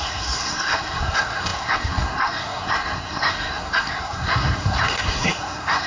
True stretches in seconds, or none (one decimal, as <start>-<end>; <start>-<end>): none